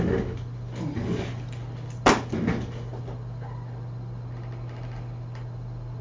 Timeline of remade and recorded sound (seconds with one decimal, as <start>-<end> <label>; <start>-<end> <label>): 0.0-6.0 recorded